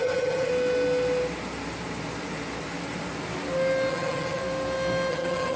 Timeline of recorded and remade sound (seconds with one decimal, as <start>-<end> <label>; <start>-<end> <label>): 0.0-0.5 remade; 0.5-3.9 recorded; 3.9-4.4 remade; 4.4-5.1 recorded; 5.1-5.6 remade

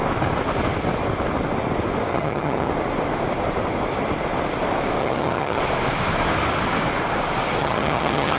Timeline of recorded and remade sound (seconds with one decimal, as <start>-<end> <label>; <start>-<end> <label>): 0.0-2.1 recorded; 2.1-2.7 remade; 2.7-5.0 recorded; 5.0-5.6 remade; 5.6-7.6 recorded; 7.6-8.4 remade

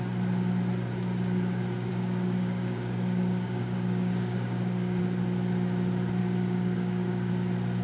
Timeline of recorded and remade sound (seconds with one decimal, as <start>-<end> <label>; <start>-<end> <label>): 0.0-1.9 recorded; 1.9-5.0 remade; 5.0-6.2 recorded; 6.2-7.3 remade; 7.3-7.8 recorded

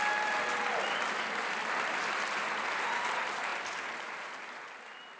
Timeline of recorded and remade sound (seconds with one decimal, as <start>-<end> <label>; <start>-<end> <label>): 0.0-5.2 recorded

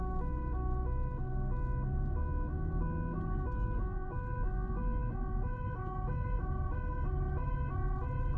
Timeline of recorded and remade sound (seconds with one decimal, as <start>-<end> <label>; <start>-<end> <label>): 0.0-8.4 recorded

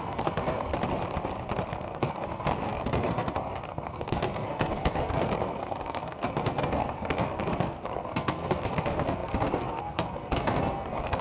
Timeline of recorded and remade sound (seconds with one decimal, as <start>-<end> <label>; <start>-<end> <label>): 0.0-0.7 remade; 0.7-1.7 recorded; 1.7-11.2 remade

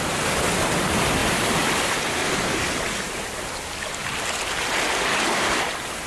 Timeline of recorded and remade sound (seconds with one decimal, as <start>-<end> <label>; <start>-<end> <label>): 0.0-5.1 recorded; 5.1-5.6 remade; 5.6-6.1 recorded